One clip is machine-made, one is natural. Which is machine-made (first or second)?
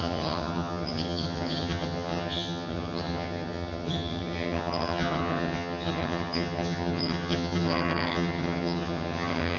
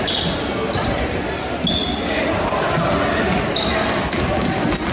first